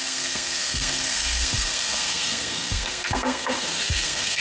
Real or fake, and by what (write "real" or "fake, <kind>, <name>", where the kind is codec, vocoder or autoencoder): fake, codec, SNAC